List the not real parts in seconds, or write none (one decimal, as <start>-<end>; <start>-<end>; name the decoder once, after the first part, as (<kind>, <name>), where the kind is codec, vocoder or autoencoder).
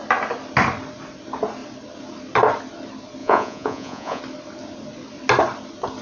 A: 3.2-4.2 (vocoder, Vocos)